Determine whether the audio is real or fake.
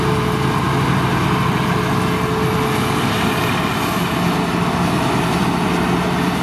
real